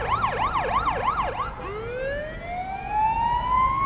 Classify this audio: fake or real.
real